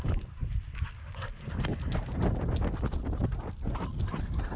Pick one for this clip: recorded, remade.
recorded